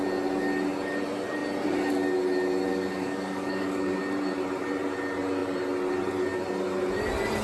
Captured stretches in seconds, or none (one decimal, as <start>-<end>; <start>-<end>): 0.0-2.7; 4.0-7.4

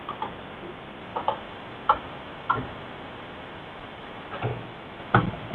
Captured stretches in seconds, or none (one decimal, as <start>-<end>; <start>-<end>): 0.0-4.5; 5.0-5.5